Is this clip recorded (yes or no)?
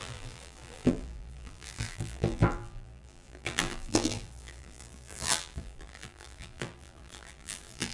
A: no